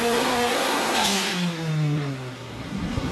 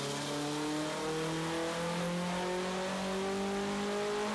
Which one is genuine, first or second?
second